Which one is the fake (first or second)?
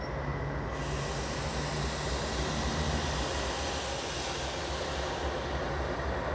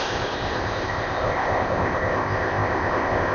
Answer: second